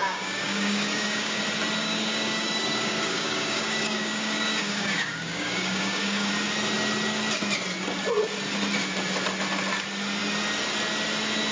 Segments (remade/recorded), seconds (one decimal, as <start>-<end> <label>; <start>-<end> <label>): 0.0-1.4 remade; 1.4-1.8 recorded; 1.8-6.3 remade; 6.3-11.5 recorded